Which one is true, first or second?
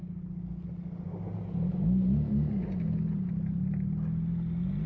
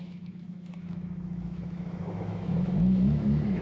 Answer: first